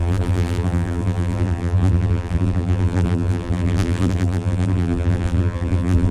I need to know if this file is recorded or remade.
remade